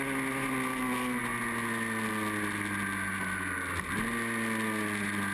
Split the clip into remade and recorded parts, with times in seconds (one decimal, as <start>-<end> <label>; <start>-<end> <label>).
0.0-5.3 recorded